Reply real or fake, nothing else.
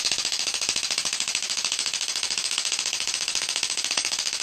fake